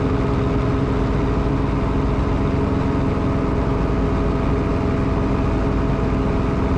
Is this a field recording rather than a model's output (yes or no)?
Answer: yes